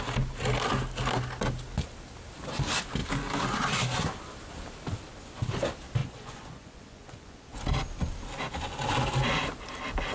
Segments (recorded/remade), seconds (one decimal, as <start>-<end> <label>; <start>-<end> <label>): 0.0-6.0 recorded; 6.0-7.6 remade; 7.6-10.1 recorded